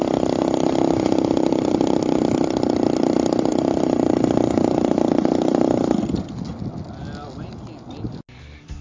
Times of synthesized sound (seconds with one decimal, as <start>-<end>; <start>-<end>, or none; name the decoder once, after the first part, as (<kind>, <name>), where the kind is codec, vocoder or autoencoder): none